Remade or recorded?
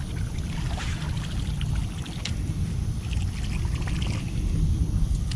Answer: recorded